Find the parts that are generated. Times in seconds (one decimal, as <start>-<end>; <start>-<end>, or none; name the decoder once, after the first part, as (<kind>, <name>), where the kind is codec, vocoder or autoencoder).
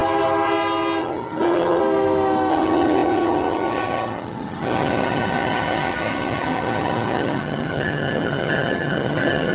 1.0-1.8 (vocoder, HiFi-GAN); 2.5-9.5